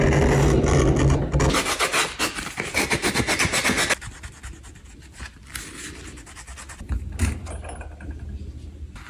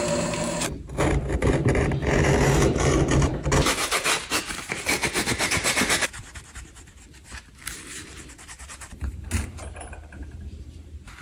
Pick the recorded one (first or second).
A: first